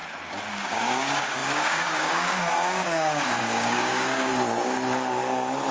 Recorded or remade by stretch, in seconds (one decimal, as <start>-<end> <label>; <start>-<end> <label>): 0.0-0.5 recorded; 0.5-4.3 remade; 4.3-5.7 recorded